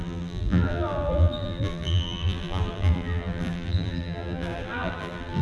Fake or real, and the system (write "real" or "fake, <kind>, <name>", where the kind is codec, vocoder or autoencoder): fake, vocoder, BigVGAN v2